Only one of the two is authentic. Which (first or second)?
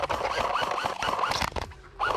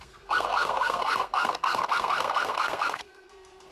first